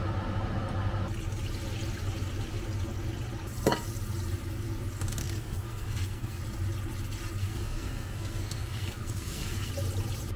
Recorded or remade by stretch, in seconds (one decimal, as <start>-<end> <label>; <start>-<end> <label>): 0.0-5.2 recorded; 5.2-6.4 remade; 6.4-7.4 recorded; 7.4-9.7 remade; 9.7-10.4 recorded